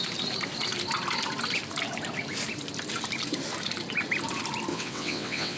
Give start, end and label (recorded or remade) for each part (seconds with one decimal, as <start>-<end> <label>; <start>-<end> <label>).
0.0-4.7 recorded; 4.7-5.6 remade